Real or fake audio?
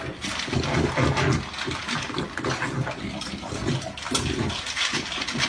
real